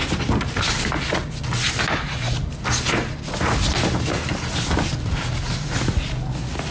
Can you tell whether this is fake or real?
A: real